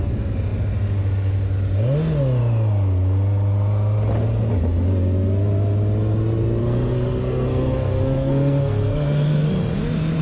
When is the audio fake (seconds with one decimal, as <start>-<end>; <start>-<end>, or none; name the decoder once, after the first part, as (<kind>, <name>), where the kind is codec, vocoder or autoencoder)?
6.6-9.5 (codec, SNAC)